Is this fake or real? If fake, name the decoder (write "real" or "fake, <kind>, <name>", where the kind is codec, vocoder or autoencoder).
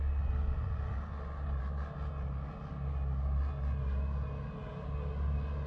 real